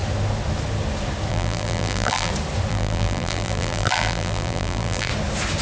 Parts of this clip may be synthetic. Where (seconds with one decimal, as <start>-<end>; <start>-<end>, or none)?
1.3-2.3; 2.7-5.1